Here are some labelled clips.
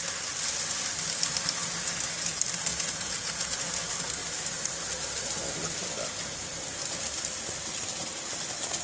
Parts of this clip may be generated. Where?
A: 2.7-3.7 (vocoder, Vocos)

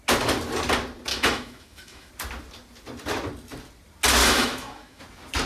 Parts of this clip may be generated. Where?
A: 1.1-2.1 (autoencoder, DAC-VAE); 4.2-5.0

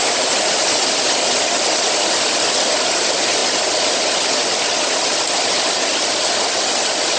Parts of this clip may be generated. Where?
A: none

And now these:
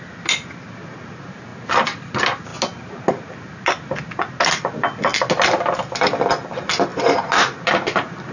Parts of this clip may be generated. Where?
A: none

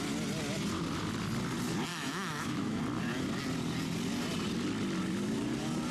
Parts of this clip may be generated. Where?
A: 1.9-2.8 (autoencoder, DAC-VAE)

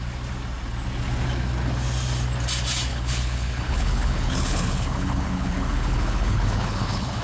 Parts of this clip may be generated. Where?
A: 2.9-7.2 (codec, HILCodec)